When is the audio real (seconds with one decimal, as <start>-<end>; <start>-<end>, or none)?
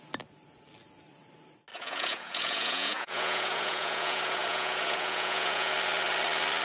0.0-1.7; 5.7-6.6